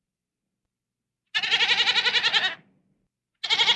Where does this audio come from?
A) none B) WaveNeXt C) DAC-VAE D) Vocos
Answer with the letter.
A